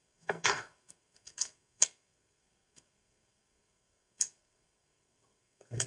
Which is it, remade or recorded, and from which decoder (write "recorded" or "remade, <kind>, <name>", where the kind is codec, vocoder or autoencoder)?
remade, codec, SNAC